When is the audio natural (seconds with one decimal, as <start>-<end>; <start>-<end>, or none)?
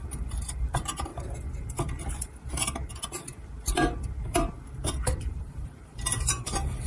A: 1.1-5.2